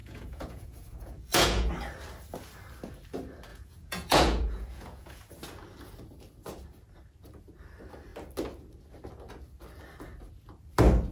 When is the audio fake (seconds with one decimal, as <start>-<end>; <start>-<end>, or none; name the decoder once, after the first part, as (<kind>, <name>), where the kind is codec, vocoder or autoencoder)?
0.0-1.7 (vocoder, Vocos); 3.5-5.2